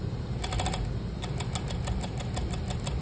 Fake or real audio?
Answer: real